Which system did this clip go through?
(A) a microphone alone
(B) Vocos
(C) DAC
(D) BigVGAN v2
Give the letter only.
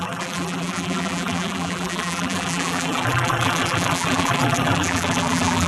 D